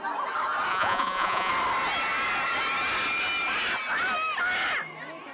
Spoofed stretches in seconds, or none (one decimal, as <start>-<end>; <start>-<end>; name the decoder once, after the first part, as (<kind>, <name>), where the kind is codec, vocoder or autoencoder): 0.7-1.5 (vocoder, Vocos)